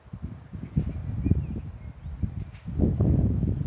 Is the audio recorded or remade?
recorded